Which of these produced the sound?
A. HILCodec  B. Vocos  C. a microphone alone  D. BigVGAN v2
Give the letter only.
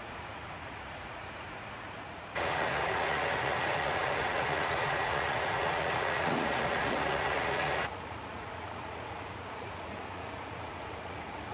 B